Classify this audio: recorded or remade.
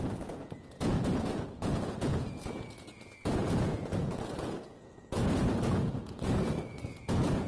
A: remade